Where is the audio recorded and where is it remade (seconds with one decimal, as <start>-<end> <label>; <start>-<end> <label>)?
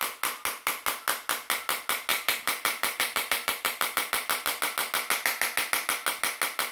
0.0-2.1 recorded; 2.1-4.1 remade; 4.1-6.7 recorded